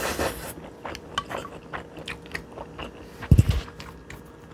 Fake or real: real